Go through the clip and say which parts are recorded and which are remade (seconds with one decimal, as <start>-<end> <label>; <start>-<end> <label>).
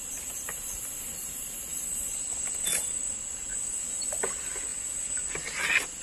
0.0-6.0 recorded